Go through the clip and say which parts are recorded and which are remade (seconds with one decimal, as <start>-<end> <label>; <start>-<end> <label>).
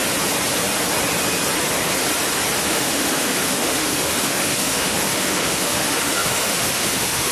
0.0-2.7 recorded; 2.7-7.3 remade